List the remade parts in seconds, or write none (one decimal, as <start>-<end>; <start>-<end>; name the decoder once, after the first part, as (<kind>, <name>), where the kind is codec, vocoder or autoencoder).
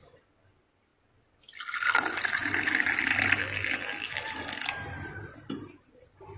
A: 3.4-4.2 (vocoder, BigVGAN v2)